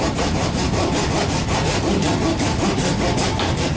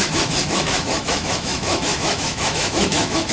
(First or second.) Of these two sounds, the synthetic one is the second